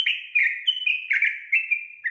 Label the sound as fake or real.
real